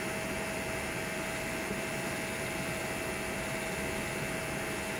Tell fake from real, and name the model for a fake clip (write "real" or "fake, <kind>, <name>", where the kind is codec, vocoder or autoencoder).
fake, vocoder, BigVGAN v2